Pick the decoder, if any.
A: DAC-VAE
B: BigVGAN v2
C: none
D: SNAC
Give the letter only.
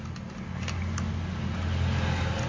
C